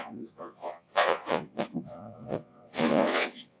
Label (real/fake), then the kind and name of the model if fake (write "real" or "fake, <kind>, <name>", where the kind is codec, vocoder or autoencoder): fake, vocoder, Vocos